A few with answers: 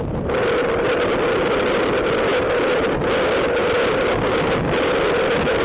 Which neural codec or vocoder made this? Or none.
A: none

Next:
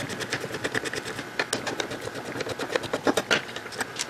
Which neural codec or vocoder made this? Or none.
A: none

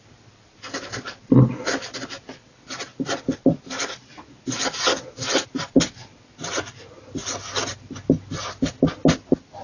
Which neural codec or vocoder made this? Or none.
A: none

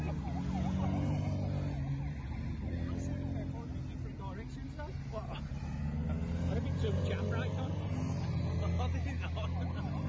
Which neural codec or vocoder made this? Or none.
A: none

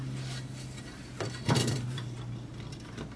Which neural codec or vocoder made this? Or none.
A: vocoder, BigVGAN v2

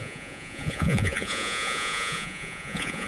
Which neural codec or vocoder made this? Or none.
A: vocoder, Vocos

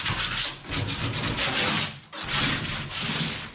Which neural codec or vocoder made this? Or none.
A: none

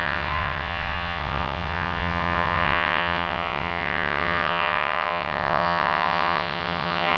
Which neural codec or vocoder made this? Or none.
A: vocoder, WaveNeXt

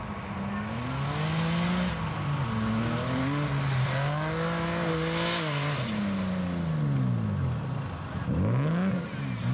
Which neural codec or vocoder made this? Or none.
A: none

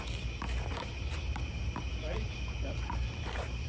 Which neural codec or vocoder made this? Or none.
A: none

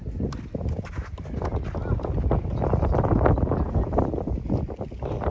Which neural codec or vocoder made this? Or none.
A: none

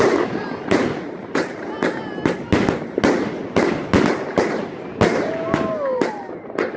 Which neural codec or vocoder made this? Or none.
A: none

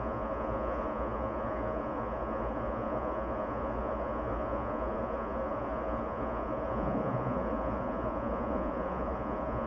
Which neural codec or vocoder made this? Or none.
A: vocoder, Vocos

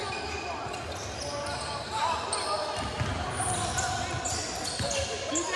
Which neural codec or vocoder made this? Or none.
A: none